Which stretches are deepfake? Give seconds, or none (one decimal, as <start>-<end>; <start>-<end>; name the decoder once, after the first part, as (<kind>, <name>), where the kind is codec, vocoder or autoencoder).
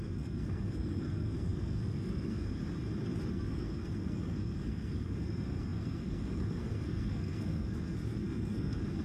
0.0-2.6 (codec, SNAC); 3.3-9.0